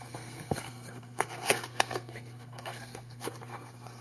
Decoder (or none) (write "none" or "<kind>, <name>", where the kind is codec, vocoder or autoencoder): codec, SNAC